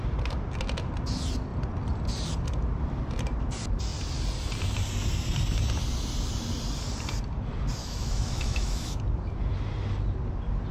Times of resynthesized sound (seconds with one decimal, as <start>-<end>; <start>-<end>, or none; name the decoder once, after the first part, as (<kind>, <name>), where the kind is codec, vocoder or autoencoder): 7.8-9.0 (autoencoder, DAC-VAE)